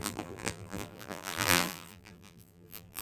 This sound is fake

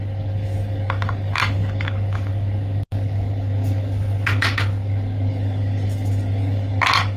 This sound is fake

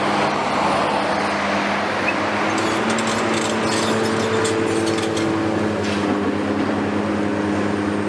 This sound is real